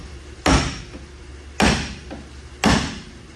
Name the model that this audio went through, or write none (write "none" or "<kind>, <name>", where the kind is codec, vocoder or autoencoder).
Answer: none